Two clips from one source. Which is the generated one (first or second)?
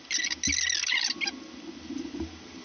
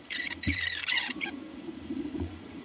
second